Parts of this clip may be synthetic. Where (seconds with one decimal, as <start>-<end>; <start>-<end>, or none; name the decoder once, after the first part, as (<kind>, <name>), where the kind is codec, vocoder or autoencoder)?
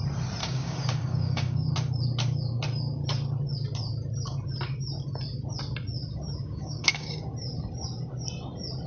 0.4-1.7 (codec, DAC); 6.4-7.2